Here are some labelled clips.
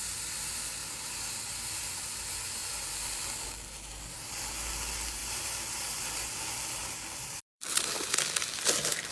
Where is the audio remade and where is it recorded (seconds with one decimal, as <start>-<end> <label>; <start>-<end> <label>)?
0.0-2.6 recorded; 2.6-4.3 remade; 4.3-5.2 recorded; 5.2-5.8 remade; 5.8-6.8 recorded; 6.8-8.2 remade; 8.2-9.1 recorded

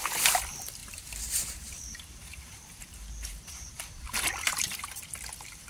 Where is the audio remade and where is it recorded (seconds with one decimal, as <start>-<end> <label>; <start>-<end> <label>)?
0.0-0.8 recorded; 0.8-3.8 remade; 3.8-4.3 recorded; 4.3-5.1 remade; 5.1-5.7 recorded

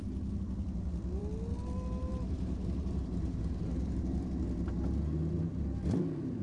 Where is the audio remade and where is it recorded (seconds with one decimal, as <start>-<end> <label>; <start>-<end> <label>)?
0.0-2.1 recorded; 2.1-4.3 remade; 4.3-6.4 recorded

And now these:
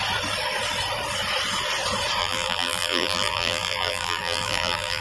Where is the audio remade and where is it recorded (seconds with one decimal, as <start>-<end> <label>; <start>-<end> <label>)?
0.0-2.2 recorded; 2.2-5.0 remade

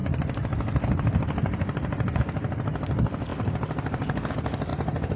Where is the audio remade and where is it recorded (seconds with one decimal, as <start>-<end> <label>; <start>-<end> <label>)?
0.0-5.2 recorded

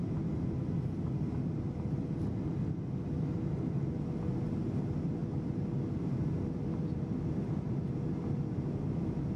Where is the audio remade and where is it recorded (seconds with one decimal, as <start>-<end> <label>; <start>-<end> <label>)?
0.0-9.4 recorded